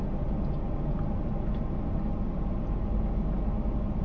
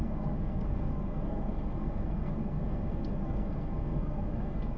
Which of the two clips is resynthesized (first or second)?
second